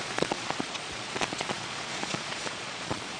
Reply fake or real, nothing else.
fake